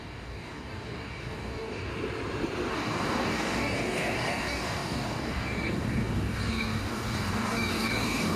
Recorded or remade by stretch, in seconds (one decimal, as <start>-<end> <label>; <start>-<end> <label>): 0.0-1.9 remade; 1.9-2.7 recorded; 2.7-8.4 remade

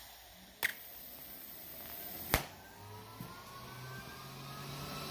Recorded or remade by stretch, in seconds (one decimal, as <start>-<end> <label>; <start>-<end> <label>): 0.0-0.7 recorded; 0.7-3.3 remade; 3.3-5.1 recorded

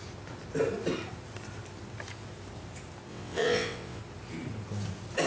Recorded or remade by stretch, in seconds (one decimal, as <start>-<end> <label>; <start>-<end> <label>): 0.0-3.1 recorded; 3.1-4.0 remade; 4.0-5.3 recorded

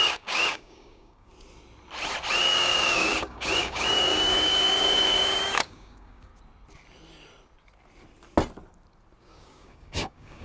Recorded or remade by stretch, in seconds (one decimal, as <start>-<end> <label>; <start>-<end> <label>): 0.0-1.3 remade; 1.3-2.4 recorded; 2.4-6.3 remade; 6.3-9.2 recorded; 9.2-10.4 remade

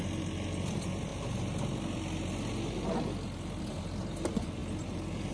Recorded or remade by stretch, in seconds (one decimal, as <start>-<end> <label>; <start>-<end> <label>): 0.0-5.3 recorded

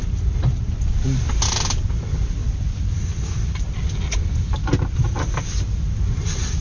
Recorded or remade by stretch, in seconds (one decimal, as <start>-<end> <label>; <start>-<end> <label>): 0.0-6.6 recorded

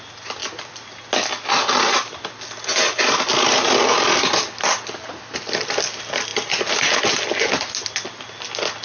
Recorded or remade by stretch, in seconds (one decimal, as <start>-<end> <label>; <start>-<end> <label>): 0.0-8.8 recorded

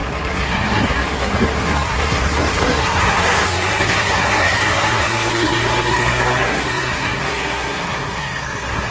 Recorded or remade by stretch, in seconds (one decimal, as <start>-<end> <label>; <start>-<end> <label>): 0.0-8.9 remade